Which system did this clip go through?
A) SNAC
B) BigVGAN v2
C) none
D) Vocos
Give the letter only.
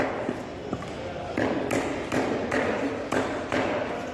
C